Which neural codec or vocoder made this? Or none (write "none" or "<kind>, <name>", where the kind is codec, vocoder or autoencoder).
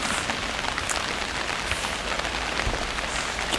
none